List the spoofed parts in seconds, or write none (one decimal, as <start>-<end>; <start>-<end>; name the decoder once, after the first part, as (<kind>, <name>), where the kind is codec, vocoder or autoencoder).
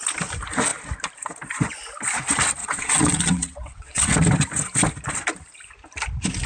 2.6-4.1 (vocoder, WaveNeXt)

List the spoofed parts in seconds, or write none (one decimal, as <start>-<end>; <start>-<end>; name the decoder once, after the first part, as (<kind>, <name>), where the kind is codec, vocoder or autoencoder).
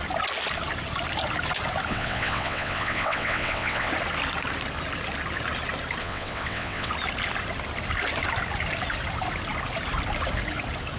1.9-3.9 (vocoder, WaveNeXt); 6.0-6.9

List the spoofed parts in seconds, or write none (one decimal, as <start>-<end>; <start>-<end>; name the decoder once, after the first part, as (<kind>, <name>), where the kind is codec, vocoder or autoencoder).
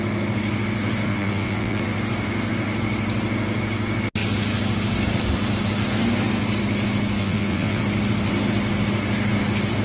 1.1-1.8 (vocoder, WaveNeXt); 7.2-7.8